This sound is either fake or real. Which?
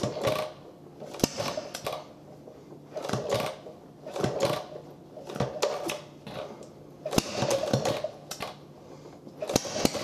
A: real